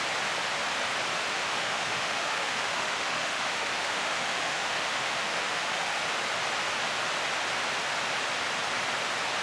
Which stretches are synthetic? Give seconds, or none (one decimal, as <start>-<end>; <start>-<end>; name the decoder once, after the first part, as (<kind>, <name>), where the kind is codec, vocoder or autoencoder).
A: 1.3-6.0 (autoencoder, DAC-VAE)